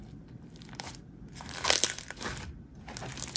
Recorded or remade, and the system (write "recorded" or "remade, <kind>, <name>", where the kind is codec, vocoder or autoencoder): remade, vocoder, BigVGAN v2